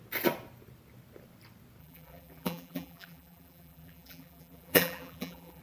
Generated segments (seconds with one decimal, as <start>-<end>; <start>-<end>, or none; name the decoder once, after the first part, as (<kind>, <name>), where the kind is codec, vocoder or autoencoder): 1.8-5.6 (vocoder, BigVGAN v2)